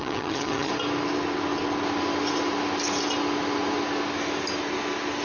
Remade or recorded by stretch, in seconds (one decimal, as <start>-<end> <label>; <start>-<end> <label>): 0.0-0.7 remade; 0.7-5.2 recorded